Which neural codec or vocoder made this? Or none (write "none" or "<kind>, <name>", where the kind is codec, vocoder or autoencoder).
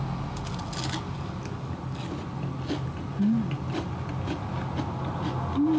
none